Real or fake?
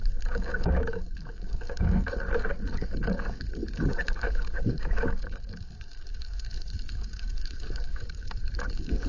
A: fake